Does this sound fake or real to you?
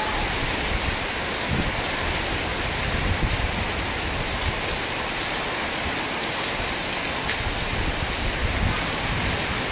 real